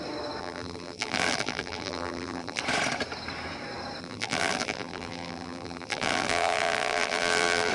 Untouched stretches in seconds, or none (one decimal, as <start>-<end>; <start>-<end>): 0.0-0.4; 2.6-4.0